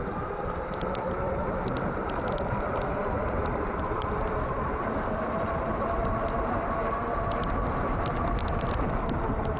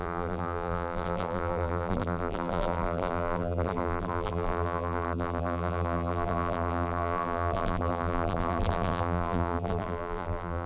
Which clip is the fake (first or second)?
second